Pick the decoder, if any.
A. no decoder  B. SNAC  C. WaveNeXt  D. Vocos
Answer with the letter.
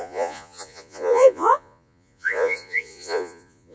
D